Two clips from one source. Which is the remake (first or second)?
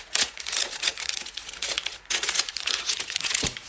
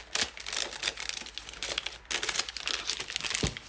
first